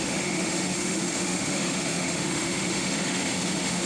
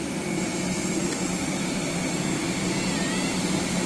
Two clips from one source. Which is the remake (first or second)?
first